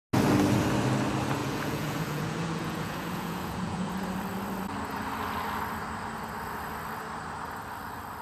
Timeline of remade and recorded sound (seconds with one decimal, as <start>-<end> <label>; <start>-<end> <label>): 0.0-1.4 recorded; 1.4-3.9 remade; 3.9-8.2 recorded